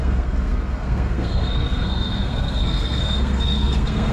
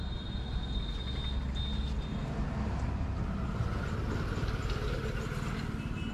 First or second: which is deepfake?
first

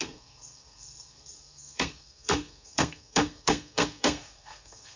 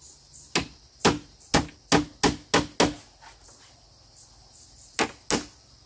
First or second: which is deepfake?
first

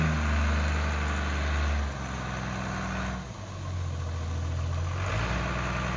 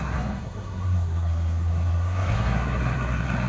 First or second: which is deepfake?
second